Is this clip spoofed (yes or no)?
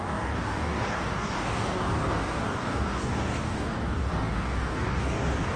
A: yes